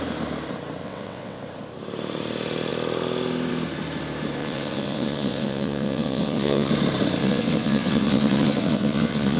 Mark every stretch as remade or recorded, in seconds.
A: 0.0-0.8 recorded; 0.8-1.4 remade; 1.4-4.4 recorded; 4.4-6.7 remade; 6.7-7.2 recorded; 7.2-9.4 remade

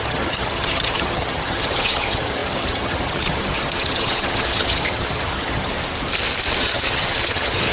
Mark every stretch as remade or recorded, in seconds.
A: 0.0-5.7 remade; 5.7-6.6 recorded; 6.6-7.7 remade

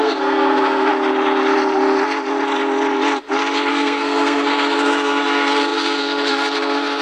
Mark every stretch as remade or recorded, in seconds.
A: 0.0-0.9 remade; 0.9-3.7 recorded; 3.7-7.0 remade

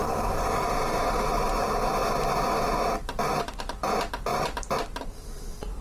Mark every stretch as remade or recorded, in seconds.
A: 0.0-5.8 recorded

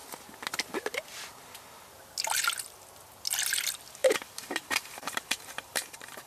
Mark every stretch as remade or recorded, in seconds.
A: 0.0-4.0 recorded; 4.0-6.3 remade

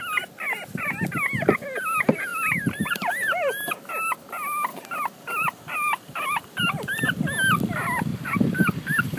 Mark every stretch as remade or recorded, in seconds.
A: 0.0-2.3 recorded; 2.3-3.8 remade; 3.8-4.7 recorded; 4.7-6.6 remade; 6.6-8.1 recorded; 8.1-9.2 remade